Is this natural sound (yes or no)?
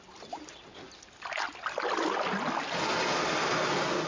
yes